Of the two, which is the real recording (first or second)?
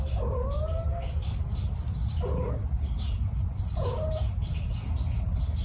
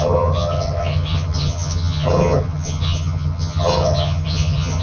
first